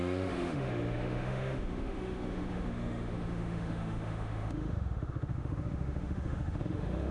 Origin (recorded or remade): remade